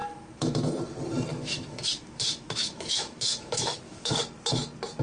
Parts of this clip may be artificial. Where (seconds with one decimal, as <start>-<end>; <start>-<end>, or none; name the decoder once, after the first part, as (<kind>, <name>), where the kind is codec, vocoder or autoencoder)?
0.0-0.7 (autoencoder, DAC-VAE); 1.3-4.2